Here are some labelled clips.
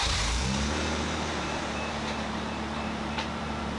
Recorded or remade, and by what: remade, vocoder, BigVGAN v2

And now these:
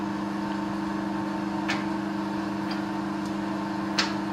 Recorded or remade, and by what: recorded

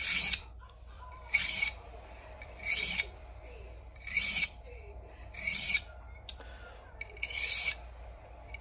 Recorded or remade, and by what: remade, vocoder, BigVGAN v2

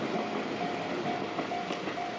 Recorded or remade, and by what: recorded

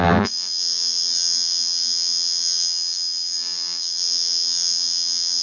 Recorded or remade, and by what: remade, vocoder, BigVGAN v2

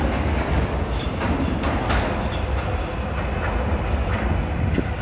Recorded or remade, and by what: recorded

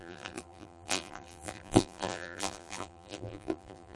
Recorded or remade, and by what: remade, vocoder, BigVGAN v2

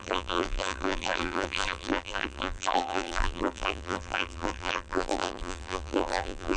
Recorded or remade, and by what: remade, vocoder, BigVGAN v2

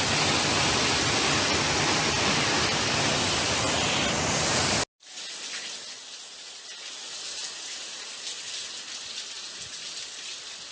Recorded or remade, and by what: recorded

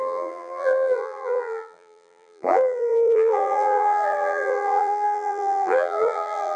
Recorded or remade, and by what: remade, vocoder, BigVGAN v2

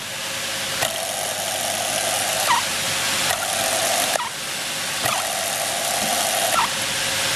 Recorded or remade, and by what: recorded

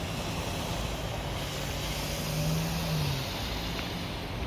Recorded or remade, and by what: recorded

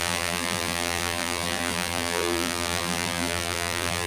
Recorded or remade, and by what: remade, vocoder, BigVGAN v2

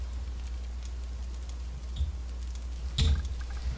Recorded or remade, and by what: recorded